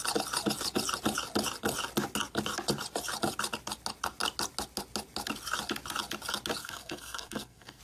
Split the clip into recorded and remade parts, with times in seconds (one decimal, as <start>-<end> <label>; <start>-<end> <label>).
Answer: 0.0-6.6 recorded; 6.6-7.8 remade